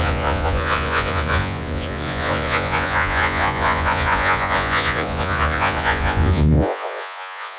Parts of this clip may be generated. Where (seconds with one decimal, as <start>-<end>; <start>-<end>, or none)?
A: 0.0-7.6

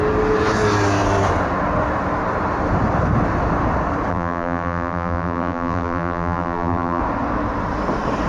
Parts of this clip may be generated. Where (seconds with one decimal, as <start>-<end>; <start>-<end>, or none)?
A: 4.1-7.0

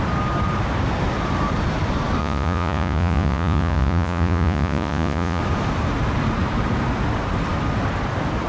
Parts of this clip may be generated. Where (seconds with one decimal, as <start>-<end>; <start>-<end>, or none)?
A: 2.2-5.4

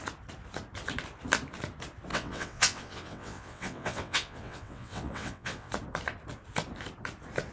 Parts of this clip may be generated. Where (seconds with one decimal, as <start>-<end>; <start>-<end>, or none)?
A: 2.1-5.7